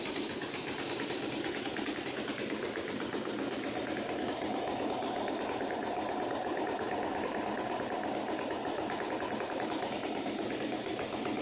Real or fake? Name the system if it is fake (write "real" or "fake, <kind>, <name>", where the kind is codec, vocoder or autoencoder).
real